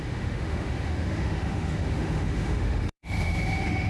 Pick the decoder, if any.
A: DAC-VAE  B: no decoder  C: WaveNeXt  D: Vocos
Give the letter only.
A